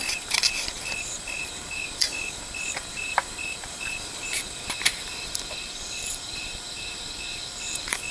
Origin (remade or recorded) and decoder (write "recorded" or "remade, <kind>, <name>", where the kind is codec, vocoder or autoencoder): remade, vocoder, BigVGAN v2